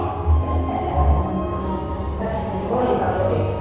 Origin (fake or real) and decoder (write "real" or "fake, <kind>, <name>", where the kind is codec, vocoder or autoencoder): fake, codec, DAC